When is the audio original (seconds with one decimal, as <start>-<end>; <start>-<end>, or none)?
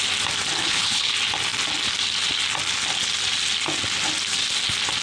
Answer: 0.0-0.6; 1.1-5.0